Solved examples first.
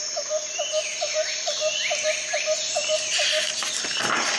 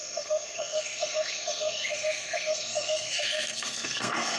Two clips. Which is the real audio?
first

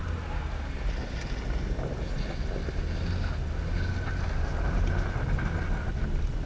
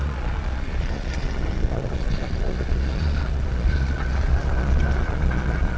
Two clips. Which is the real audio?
first